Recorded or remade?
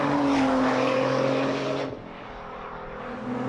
remade